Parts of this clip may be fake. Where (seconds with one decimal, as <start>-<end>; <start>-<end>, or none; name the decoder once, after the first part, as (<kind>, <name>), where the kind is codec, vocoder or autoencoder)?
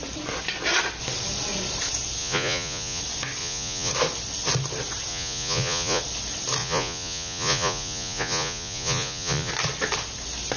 2.2-3.0 (vocoder, Vocos); 3.4-3.9; 5.1-6.0; 6.6-9.5